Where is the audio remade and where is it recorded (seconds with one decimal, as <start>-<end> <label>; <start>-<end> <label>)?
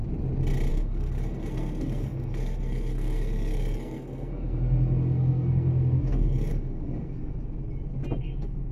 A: 0.0-0.7 recorded; 0.7-7.3 remade; 7.3-8.2 recorded; 8.2-8.7 remade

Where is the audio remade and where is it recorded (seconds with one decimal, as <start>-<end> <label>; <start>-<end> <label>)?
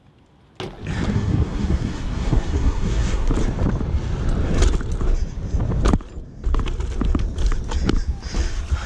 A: 0.0-1.1 recorded; 1.1-3.3 remade; 3.3-8.9 recorded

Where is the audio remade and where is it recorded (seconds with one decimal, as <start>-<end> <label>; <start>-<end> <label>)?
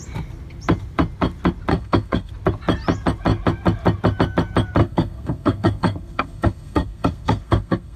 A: 0.0-1.7 recorded; 1.7-2.3 remade; 2.3-4.8 recorded; 4.8-8.0 remade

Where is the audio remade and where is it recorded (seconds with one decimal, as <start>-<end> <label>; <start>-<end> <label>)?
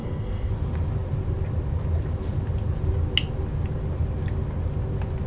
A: 0.0-0.5 remade; 0.5-5.3 recorded